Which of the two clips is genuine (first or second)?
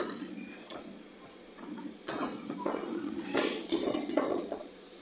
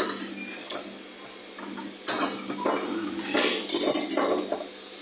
second